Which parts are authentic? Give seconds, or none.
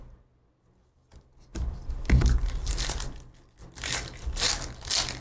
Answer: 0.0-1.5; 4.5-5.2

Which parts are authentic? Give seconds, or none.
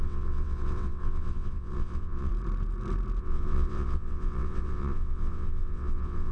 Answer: 2.3-3.2